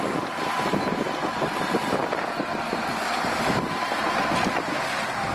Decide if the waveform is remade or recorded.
recorded